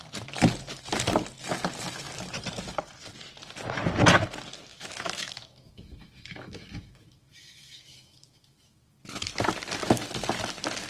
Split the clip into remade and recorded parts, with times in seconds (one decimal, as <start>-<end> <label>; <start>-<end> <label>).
0.0-4.7 recorded; 4.7-9.0 remade; 9.0-10.9 recorded